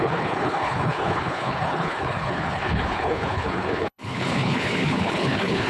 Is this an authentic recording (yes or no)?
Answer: no